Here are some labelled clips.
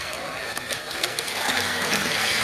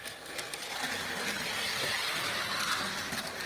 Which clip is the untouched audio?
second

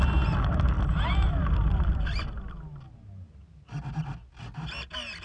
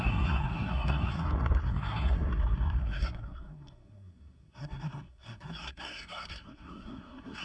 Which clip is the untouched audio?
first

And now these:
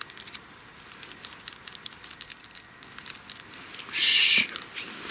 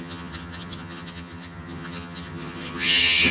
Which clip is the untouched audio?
first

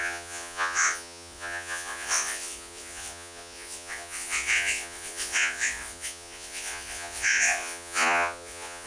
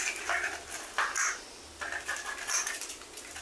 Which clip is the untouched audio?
second